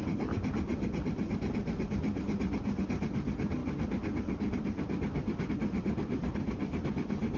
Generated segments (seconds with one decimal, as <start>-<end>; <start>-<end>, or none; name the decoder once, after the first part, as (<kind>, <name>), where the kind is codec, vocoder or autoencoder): 0.7-1.2 (vocoder, BigVGAN v2)